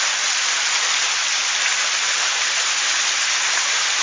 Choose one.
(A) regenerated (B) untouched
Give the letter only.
B